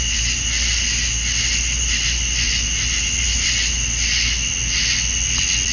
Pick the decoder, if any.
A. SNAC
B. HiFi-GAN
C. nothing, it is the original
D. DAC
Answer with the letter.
C